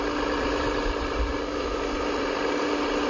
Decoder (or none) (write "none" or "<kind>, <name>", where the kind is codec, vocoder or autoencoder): none